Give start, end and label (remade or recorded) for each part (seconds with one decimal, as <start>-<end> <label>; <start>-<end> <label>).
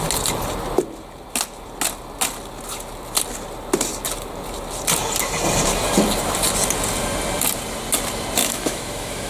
0.0-8.4 recorded; 8.4-9.3 remade